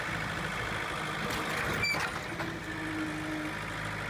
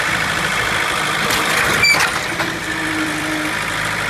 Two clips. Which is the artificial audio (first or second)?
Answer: second